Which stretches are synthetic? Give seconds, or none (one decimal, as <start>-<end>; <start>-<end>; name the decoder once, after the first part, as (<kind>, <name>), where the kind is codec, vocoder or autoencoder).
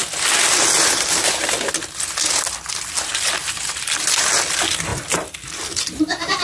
none